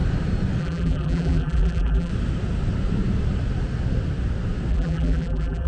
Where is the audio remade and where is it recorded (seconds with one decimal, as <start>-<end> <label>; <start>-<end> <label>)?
0.0-0.6 recorded; 0.6-2.1 remade; 2.1-4.7 recorded; 4.7-5.7 remade